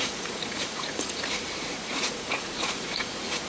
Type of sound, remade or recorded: remade